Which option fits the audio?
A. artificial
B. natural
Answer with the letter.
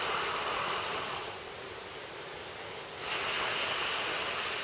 B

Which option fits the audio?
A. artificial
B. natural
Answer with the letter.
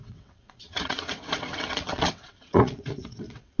A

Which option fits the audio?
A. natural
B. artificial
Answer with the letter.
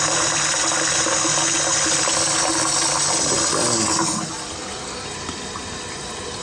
A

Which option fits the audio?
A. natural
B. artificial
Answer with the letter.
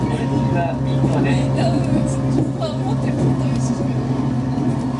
A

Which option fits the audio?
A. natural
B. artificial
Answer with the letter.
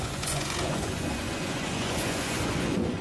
B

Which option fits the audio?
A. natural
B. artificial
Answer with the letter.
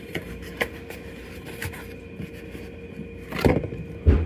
A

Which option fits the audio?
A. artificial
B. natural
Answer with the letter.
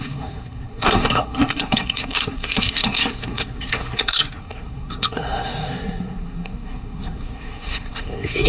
A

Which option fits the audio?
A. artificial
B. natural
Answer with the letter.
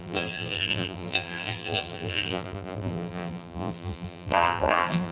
A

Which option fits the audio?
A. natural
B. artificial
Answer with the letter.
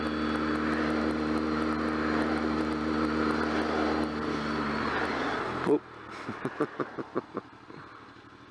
A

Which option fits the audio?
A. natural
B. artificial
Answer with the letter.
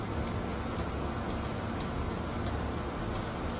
A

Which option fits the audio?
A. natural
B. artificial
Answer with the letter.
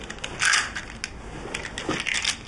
A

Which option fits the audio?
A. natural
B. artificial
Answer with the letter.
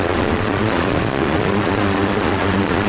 B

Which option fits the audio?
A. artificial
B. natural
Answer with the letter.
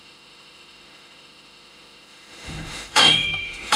A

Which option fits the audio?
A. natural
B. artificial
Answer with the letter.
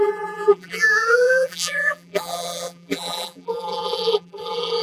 B